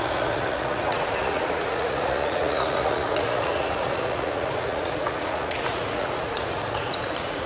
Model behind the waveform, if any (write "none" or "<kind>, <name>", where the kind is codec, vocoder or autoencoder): vocoder, Vocos